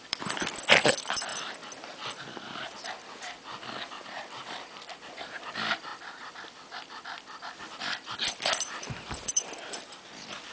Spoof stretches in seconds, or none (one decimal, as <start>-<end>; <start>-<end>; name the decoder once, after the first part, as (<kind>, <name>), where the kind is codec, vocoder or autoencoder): 0.0-1.3 (vocoder, BigVGAN v2); 2.7-5.9; 7.8-10.5